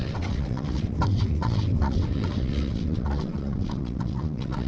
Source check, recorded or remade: remade